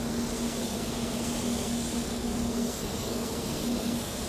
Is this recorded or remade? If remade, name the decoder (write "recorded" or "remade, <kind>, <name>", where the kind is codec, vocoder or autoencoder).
remade, codec, SNAC